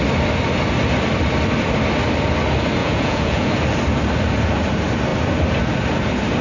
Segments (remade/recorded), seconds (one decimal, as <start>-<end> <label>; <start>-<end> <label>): 0.0-2.8 recorded; 2.8-3.5 remade; 3.5-6.4 recorded